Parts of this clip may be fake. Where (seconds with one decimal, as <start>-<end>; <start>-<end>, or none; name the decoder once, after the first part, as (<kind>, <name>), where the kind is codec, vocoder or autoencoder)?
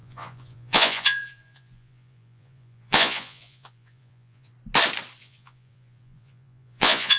0.0-4.5 (vocoder, Vocos); 5.2-7.2